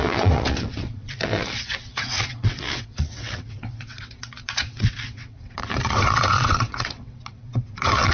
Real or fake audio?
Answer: fake